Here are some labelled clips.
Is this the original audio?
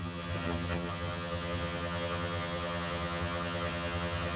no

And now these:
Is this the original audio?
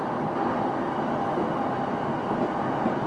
yes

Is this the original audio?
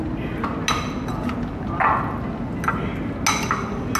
yes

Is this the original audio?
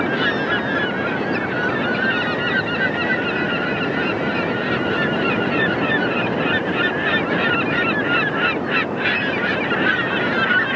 yes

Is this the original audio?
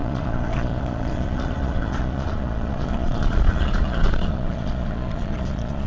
no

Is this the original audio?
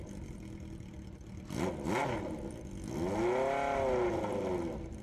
yes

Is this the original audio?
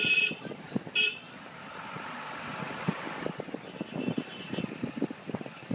yes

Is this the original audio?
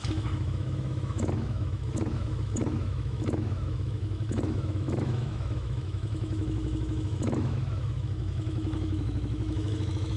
no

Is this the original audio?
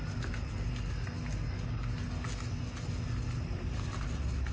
yes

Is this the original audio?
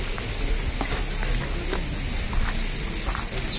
yes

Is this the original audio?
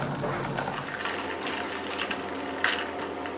yes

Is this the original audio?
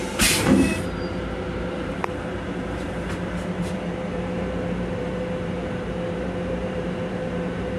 no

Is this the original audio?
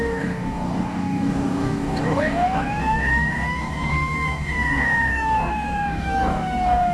no